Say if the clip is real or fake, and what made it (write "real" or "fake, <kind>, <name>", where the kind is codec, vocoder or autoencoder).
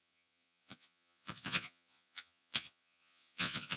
fake, vocoder, Vocos